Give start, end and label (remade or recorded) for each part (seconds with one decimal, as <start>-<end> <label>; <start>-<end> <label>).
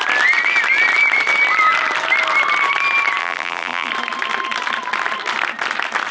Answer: 0.0-3.2 recorded; 3.2-3.9 remade; 3.9-6.1 recorded